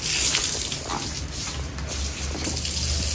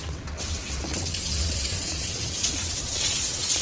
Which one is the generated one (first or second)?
second